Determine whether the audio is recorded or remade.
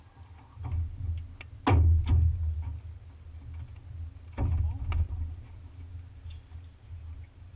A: recorded